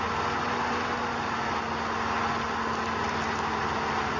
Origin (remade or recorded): recorded